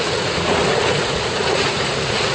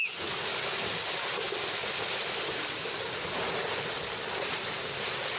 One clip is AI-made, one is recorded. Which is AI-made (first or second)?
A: first